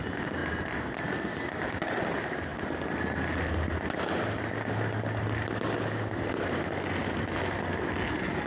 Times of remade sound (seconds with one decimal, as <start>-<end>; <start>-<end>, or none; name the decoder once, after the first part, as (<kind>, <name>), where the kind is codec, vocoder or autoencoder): none